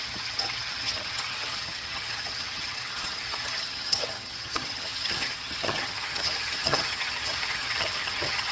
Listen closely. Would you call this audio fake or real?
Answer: fake